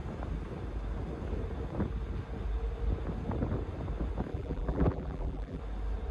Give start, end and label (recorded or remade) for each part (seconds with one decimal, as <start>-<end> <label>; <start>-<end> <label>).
0.0-4.3 recorded; 4.3-5.6 remade; 5.6-6.1 recorded